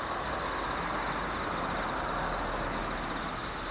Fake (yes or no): no